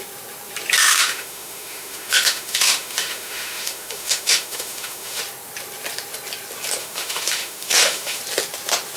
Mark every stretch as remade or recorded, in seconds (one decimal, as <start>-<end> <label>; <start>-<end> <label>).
0.0-0.8 recorded; 0.8-5.2 remade; 5.2-6.8 recorded; 6.8-8.2 remade; 8.2-9.0 recorded